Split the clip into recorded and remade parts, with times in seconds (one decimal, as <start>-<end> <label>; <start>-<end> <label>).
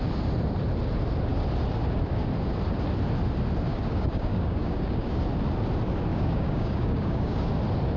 0.0-3.7 recorded; 3.7-5.2 remade; 5.2-6.1 recorded; 6.1-7.5 remade; 7.5-8.0 recorded